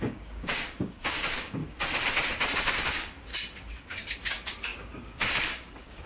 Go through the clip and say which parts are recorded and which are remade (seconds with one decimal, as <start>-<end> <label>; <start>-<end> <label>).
0.0-1.6 remade; 1.6-2.8 recorded; 2.8-3.3 remade; 3.3-3.8 recorded; 3.8-6.1 remade